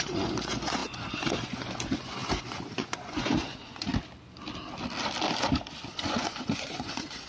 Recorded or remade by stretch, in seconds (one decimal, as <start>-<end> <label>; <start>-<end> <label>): 0.0-3.9 remade; 3.9-5.9 recorded; 5.9-7.3 remade